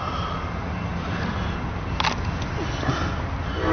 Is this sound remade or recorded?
recorded